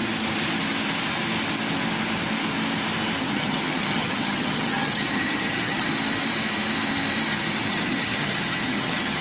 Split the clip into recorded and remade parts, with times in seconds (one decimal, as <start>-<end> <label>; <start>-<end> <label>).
0.0-3.2 recorded; 3.2-5.9 remade; 5.9-7.7 recorded; 7.7-9.2 remade

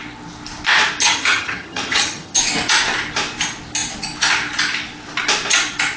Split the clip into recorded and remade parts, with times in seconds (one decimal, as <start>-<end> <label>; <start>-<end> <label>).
0.0-1.0 recorded; 1.0-2.4 remade; 2.4-6.0 recorded